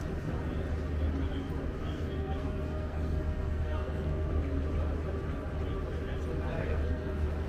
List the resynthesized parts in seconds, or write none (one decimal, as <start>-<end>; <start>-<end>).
1.8-4.3; 6.6-7.5